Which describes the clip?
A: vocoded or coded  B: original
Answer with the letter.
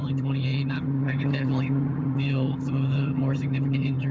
A